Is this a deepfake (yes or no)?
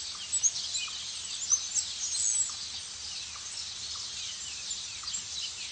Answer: no